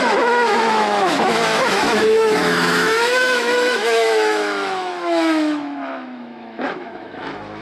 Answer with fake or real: fake